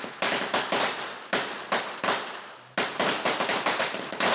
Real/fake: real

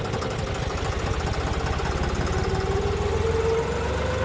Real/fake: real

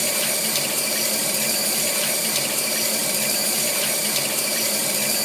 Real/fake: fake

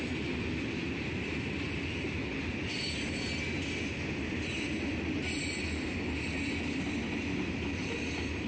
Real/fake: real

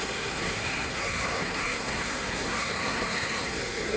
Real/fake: fake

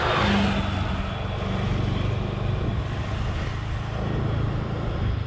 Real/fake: real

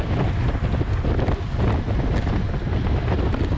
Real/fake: real